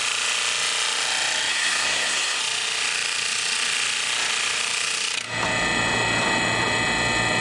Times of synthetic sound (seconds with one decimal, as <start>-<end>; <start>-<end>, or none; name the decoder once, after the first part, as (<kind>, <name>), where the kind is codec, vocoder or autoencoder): 1.5-2.4 (codec, SNAC)